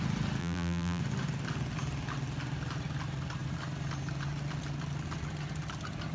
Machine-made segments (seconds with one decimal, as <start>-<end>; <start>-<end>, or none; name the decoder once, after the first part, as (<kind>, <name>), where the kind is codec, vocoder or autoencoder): 0.4-1.0 (vocoder, BigVGAN v2)